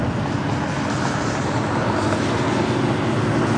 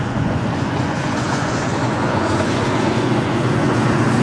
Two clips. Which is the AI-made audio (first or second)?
second